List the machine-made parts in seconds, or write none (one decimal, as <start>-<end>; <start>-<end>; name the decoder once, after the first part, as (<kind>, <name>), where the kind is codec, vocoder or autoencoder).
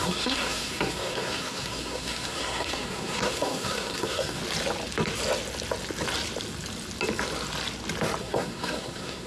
0.0-4.4 (codec, SNAC); 8.2-9.3